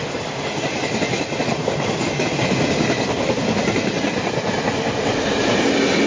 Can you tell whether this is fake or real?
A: real